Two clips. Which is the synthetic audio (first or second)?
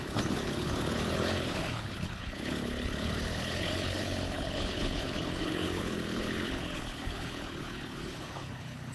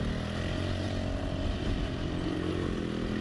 first